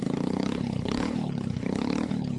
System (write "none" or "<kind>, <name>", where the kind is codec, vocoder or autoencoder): codec, HILCodec